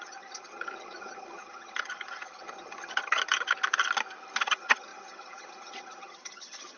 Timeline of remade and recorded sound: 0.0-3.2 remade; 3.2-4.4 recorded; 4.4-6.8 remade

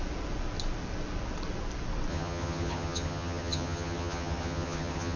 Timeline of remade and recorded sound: 0.0-2.1 recorded; 2.1-5.2 remade

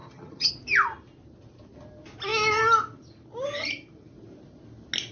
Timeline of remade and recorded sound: 0.0-0.5 remade; 0.5-5.1 recorded